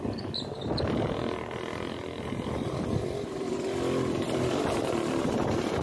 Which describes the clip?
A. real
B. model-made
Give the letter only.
A